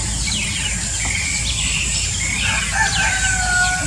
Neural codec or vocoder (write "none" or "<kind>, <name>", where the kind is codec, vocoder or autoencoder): none